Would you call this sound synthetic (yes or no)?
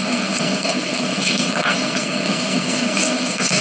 yes